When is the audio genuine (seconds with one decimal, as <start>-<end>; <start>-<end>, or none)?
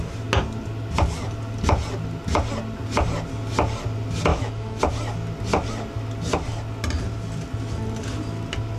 0.0-4.3; 4.8-8.8